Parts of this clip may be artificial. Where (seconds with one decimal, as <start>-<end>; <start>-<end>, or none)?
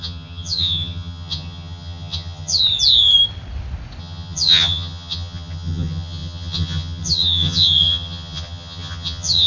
0.0-2.6; 4.0-9.5